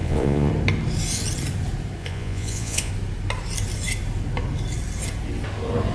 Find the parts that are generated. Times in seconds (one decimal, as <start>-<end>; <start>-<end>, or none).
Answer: 0.0-0.5; 2.0-2.9